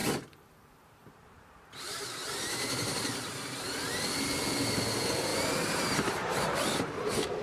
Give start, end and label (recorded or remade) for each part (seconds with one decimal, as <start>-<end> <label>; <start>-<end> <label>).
0.0-3.8 remade; 3.8-5.3 recorded; 5.3-7.4 remade